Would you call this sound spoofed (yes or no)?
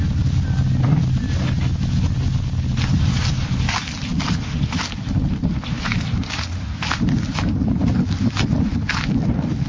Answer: no